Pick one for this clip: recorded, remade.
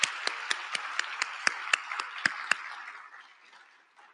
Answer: recorded